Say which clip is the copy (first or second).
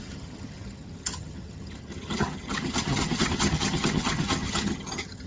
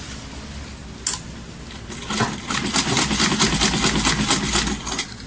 first